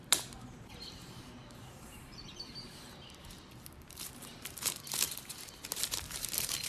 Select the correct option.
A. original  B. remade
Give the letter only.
B